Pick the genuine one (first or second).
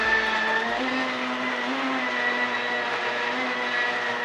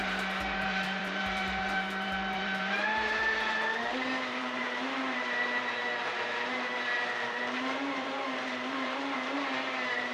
first